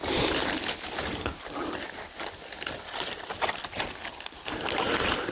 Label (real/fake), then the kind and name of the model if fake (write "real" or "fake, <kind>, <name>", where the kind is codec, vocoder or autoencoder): real